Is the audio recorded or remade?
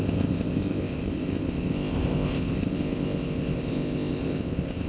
remade